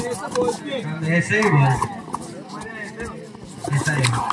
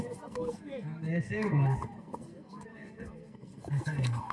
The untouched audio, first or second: first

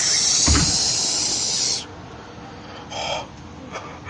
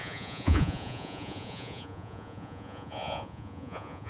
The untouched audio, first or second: first